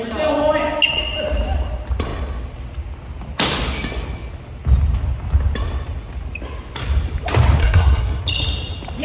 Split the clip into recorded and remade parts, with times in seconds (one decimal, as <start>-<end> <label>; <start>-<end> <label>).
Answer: 0.0-7.6 recorded; 7.6-8.2 remade; 8.2-9.0 recorded